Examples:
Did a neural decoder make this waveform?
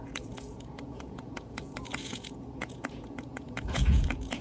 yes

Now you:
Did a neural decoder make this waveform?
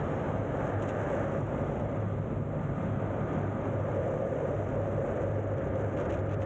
no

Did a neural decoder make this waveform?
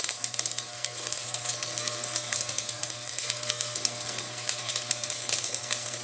yes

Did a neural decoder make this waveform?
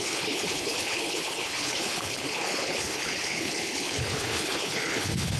yes